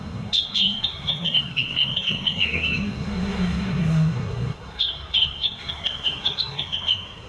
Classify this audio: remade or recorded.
remade